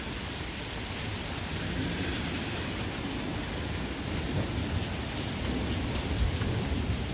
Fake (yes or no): no